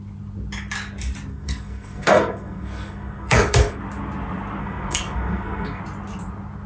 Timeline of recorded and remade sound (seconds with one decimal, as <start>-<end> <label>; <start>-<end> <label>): 0.0-1.3 recorded; 1.3-3.8 remade; 3.8-4.6 recorded; 4.6-5.8 remade; 5.8-6.7 recorded